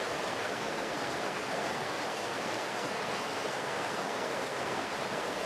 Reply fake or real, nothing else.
fake